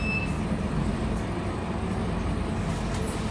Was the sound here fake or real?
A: real